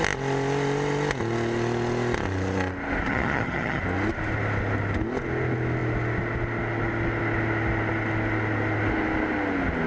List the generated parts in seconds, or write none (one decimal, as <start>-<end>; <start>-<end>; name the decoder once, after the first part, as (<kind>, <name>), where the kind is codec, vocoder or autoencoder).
3.1-3.8 (vocoder, HiFi-GAN)